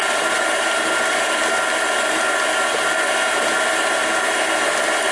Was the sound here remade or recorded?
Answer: remade